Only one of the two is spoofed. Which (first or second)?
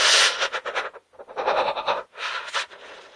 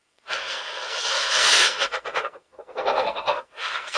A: second